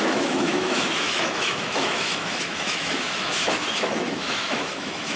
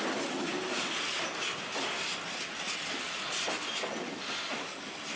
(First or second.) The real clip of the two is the second